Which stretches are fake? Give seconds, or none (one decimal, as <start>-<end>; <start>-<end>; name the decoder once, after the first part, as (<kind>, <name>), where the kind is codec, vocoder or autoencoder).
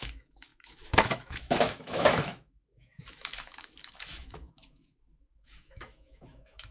0.0-6.7 (autoencoder, DAC-VAE)